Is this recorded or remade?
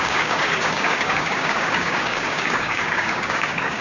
remade